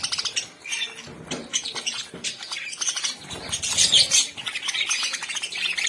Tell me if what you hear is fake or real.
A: real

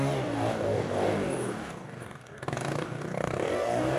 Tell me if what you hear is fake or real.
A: fake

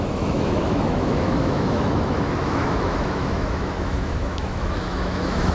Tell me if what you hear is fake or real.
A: fake